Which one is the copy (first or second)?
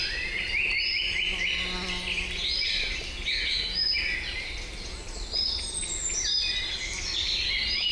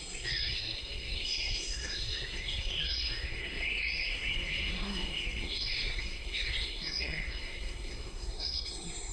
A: second